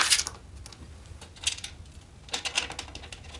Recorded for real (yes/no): yes